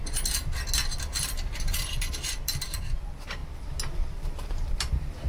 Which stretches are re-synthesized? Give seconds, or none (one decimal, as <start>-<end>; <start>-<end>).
1.1-3.4; 4.1-5.3